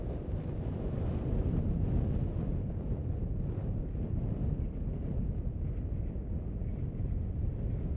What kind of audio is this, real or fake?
real